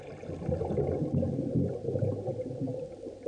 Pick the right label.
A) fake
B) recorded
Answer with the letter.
B